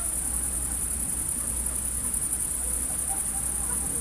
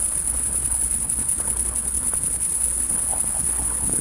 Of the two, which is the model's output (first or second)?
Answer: second